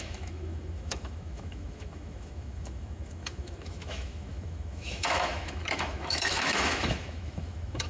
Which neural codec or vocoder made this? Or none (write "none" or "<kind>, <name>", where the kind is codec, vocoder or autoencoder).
autoencoder, DAC-VAE